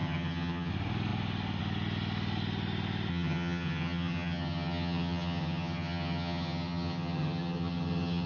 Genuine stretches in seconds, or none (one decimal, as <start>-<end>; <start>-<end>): 0.7-3.1